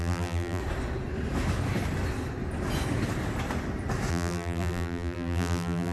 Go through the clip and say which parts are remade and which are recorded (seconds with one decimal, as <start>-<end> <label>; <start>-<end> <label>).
0.0-0.6 remade; 0.6-4.1 recorded; 4.1-5.9 remade